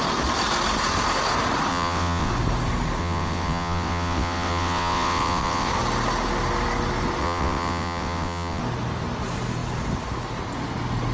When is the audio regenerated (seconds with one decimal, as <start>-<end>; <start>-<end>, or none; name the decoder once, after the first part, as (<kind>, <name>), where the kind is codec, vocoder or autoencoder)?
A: 1.7-2.3 (vocoder, WaveNeXt); 3.0-5.7; 7.2-8.6